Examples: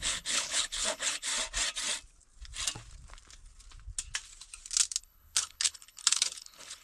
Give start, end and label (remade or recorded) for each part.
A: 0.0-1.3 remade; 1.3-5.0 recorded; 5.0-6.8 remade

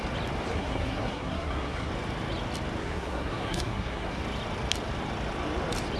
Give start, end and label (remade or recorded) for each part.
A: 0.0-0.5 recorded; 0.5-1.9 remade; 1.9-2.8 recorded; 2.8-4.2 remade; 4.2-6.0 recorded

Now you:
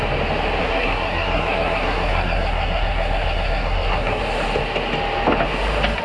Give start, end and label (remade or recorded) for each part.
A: 0.0-0.6 recorded; 0.6-4.2 remade; 4.2-6.0 recorded

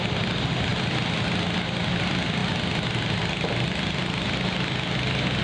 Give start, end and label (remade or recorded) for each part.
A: 0.0-5.4 recorded

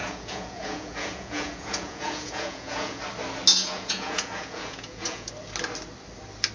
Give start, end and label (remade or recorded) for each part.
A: 0.0-3.0 remade; 3.0-3.5 recorded; 3.5-5.3 remade; 5.3-6.5 recorded

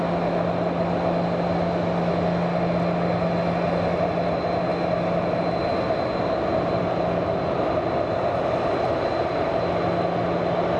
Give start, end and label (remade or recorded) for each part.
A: 0.0-10.8 recorded